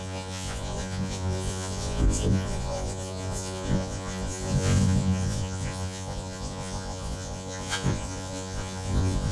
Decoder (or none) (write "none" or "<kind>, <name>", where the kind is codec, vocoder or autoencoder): vocoder, Vocos